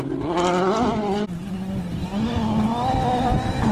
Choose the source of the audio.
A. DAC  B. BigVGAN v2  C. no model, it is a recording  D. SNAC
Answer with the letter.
C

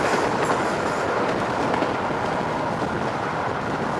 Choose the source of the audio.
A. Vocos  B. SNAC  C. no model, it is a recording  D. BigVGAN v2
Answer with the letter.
C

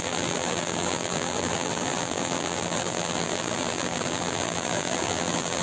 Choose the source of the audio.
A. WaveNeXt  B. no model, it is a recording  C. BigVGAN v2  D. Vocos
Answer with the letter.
C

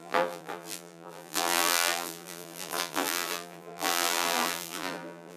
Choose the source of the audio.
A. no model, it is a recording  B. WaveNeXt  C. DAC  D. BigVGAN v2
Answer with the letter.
D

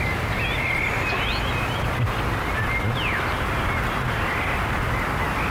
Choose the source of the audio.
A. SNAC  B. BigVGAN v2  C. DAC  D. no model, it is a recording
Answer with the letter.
D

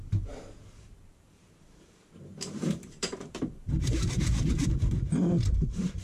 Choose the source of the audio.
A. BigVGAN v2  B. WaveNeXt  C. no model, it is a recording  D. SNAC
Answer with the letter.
A